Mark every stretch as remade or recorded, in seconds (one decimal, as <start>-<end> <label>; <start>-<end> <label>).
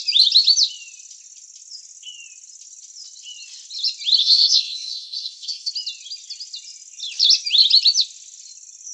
0.0-4.2 recorded; 4.2-5.7 remade; 5.7-8.9 recorded